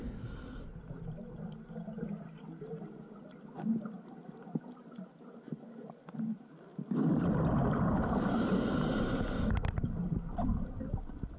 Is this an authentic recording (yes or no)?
yes